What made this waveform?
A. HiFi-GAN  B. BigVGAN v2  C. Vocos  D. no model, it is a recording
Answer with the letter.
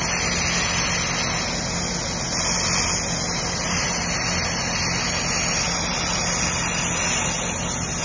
D